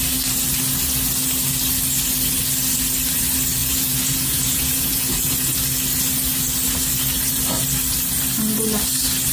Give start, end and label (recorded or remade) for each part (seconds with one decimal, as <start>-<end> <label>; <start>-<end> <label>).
0.0-3.6 recorded; 3.6-5.3 remade; 5.3-9.3 recorded